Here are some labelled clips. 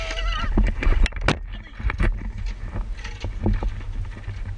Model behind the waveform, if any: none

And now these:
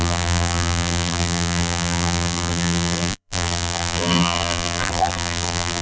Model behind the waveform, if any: vocoder, BigVGAN v2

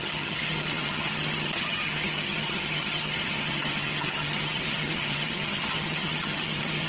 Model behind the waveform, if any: vocoder, HiFi-GAN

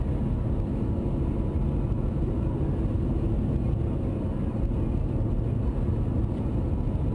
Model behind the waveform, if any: none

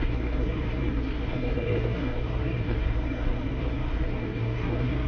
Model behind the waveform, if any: codec, SNAC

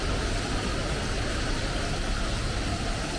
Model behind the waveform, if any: none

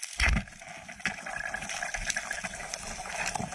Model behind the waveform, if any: none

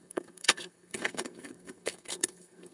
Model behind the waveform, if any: codec, SNAC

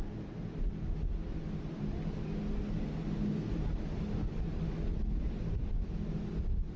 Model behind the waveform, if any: none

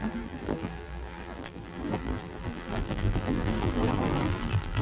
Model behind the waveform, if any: vocoder, BigVGAN v2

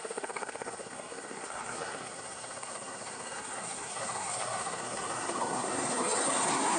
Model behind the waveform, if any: codec, SNAC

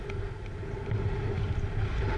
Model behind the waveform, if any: none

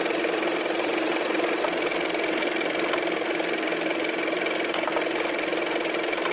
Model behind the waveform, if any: none